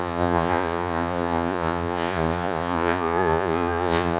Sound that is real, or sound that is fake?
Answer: fake